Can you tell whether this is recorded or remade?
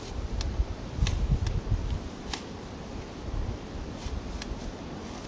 recorded